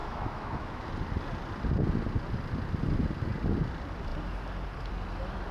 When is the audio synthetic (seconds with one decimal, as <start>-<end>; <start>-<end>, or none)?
0.0-0.9